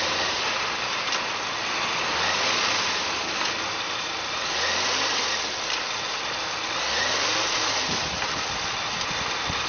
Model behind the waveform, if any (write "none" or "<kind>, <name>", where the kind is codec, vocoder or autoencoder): none